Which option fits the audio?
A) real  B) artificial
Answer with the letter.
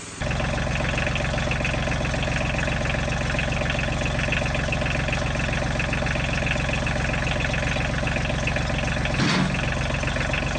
A